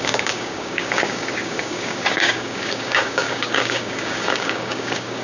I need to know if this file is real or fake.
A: fake